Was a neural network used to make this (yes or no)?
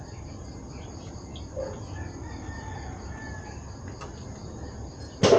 no